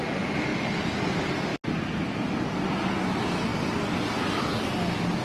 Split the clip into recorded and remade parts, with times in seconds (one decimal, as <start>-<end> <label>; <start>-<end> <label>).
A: 0.0-5.2 recorded